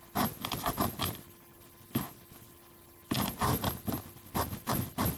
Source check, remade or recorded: recorded